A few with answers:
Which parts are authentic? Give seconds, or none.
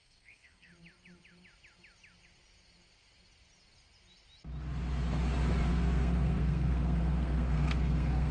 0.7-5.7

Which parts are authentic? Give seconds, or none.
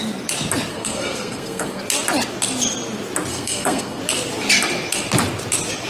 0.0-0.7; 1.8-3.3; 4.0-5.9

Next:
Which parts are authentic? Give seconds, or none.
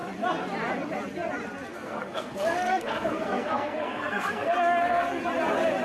0.0-1.7; 5.2-5.8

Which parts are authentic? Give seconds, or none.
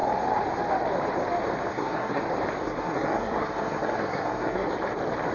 0.0-1.7; 2.2-2.6; 4.7-5.3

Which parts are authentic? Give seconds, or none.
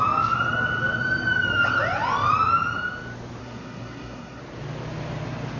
0.0-3.4; 4.4-5.6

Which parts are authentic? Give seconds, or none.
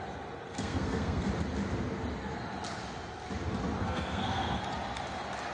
0.0-0.5; 1.3-3.8; 4.6-5.5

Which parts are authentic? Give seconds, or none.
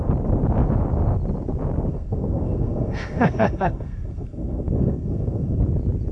0.0-1.9; 5.6-6.1